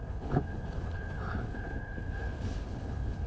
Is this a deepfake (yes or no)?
yes